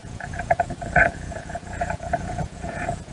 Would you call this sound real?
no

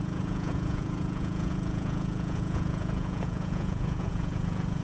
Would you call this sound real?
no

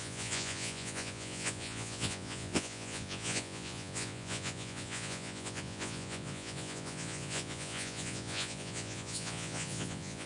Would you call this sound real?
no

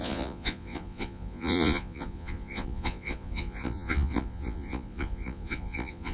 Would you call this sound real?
no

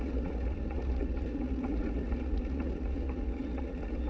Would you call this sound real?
no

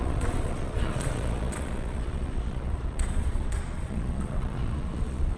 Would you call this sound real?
no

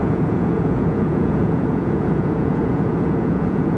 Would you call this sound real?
no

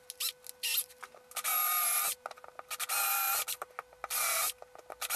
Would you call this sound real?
yes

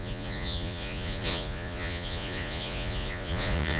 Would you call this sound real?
no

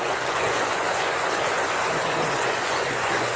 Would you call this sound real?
no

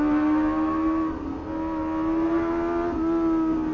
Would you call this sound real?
yes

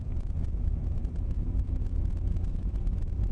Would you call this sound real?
no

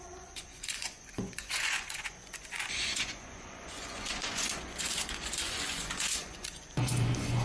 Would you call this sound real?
no